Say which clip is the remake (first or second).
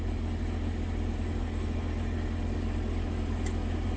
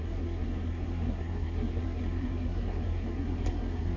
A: second